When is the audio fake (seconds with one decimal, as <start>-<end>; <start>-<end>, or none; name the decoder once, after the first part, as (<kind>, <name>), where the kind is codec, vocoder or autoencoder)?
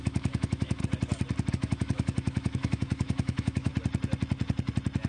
0.0-0.8 (autoencoder, DAC-VAE); 1.5-3.7